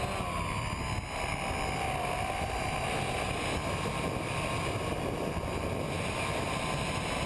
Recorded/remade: recorded